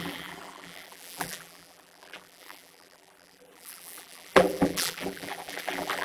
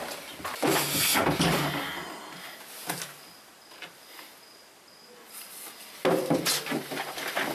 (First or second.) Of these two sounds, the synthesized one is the first